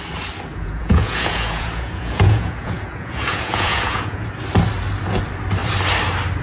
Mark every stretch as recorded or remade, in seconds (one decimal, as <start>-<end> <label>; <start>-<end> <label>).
0.0-0.5 recorded; 0.5-4.3 remade; 4.3-6.4 recorded